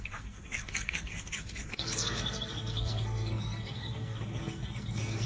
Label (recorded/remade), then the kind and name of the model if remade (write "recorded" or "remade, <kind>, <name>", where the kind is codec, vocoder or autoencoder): remade, codec, SNAC